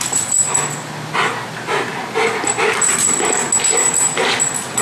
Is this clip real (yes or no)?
yes